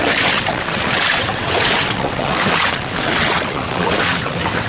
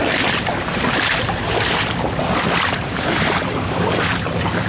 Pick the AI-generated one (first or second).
first